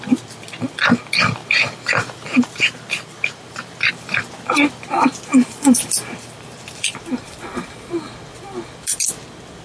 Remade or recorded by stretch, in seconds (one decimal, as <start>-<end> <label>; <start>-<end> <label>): 0.0-1.4 recorded; 1.4-3.9 remade; 3.9-5.3 recorded; 5.3-8.0 remade; 8.0-9.6 recorded